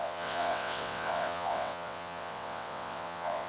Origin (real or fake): fake